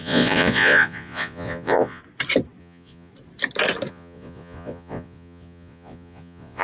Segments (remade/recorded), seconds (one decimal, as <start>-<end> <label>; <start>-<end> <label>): 0.0-2.0 remade; 2.0-2.6 recorded; 2.6-3.1 remade; 3.1-3.9 recorded; 3.9-6.6 remade